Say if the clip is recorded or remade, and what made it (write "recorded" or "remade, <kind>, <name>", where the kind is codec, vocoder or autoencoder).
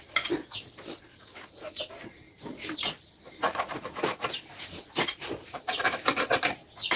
remade, vocoder, BigVGAN v2